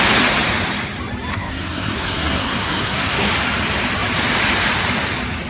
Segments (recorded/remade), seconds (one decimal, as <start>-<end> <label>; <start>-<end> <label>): 0.0-1.3 recorded; 1.3-3.3 remade; 3.3-5.5 recorded